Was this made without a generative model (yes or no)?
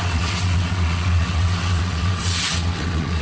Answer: no